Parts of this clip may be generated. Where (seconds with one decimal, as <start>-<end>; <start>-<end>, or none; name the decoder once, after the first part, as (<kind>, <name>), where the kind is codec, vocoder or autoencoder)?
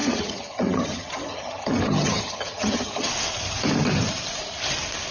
0.0-3.1 (vocoder, HiFi-GAN)